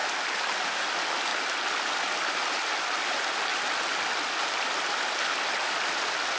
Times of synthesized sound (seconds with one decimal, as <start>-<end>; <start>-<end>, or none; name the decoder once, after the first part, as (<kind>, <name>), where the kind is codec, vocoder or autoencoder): 0.0-0.7 (vocoder, BigVGAN v2); 1.3-2.5